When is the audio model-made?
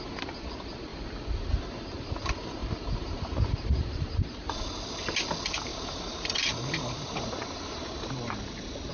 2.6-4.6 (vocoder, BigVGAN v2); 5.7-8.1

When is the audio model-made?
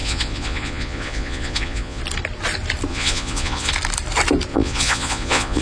0.0-2.0 (vocoder, Vocos); 2.9-3.7; 4.5-5.6